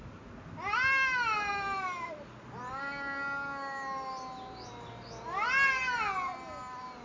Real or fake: real